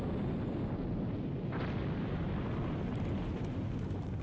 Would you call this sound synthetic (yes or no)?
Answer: no